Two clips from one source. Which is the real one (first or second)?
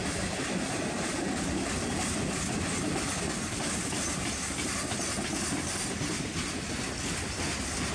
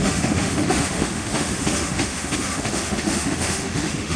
first